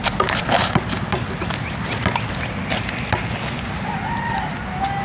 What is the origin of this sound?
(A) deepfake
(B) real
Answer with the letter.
B